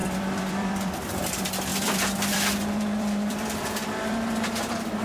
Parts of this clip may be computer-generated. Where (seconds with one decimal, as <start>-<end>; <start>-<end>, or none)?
0.0-5.0